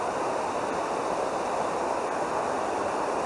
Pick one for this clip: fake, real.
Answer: real